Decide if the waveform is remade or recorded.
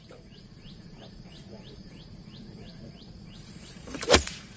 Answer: remade